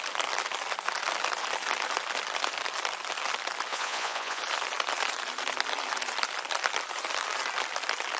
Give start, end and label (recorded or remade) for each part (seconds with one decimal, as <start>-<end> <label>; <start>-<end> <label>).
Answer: 0.0-3.7 recorded; 3.7-4.4 remade; 4.4-8.2 recorded